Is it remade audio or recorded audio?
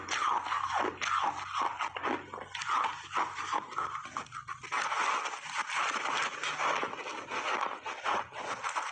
recorded